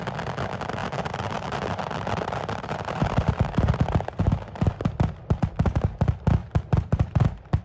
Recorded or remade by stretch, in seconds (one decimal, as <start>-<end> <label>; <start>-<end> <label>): 0.0-0.8 recorded; 0.8-4.2 remade; 4.2-6.4 recorded; 6.4-7.6 remade